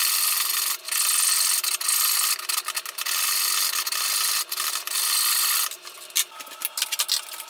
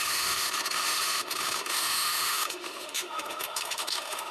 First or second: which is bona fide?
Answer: first